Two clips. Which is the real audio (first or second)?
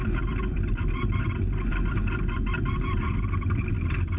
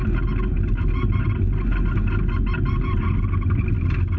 second